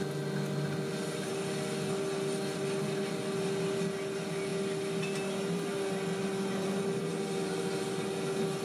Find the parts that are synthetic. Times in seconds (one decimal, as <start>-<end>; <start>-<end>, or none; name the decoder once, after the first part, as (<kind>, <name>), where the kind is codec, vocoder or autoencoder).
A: none